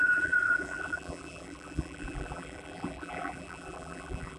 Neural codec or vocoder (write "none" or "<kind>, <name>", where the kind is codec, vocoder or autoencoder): vocoder, BigVGAN v2